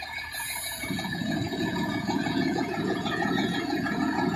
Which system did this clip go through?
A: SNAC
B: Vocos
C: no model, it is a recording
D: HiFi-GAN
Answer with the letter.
B